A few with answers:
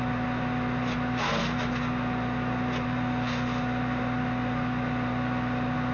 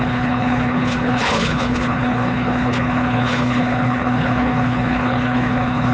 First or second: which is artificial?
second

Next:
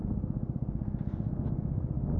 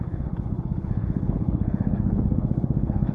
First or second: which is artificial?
second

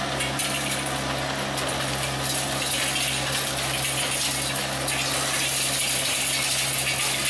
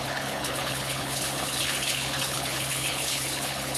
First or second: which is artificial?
second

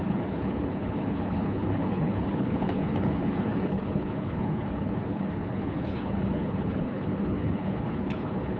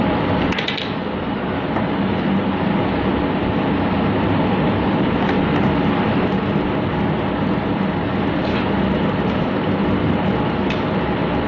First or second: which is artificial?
first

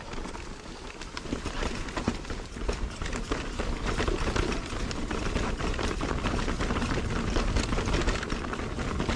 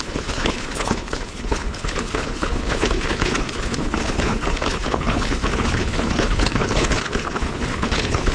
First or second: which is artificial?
second